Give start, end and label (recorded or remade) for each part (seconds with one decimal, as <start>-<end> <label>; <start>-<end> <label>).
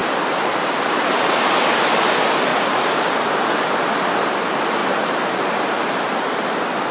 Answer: 0.0-0.5 remade; 0.5-2.5 recorded; 2.5-3.5 remade; 3.5-4.8 recorded; 4.8-6.3 remade; 6.3-6.9 recorded